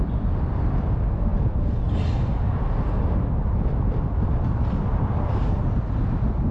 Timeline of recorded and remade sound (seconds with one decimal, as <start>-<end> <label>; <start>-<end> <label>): 0.0-6.5 recorded